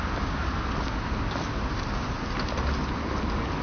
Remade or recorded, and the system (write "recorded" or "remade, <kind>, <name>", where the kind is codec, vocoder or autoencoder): recorded